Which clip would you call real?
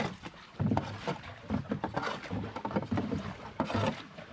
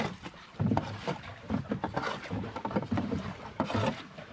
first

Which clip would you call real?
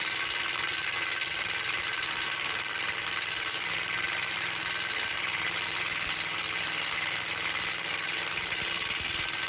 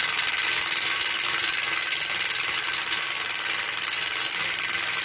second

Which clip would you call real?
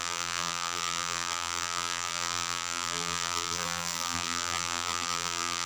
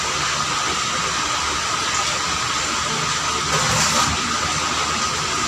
second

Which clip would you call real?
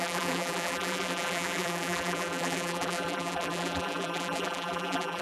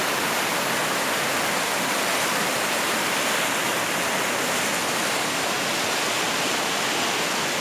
second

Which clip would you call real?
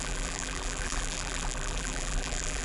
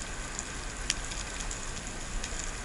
second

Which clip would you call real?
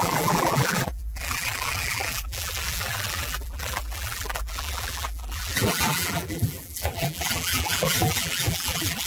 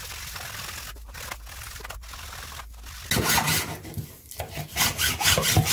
second